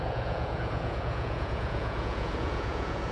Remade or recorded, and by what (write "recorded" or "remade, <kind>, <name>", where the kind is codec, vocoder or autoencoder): remade, vocoder, Vocos